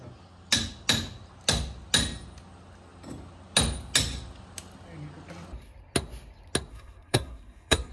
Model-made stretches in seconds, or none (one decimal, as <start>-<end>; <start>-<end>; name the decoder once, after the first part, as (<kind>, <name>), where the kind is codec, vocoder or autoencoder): 6.7-7.9 (codec, SNAC)